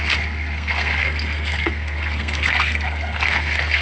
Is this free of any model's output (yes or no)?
no